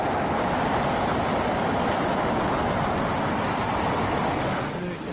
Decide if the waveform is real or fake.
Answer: real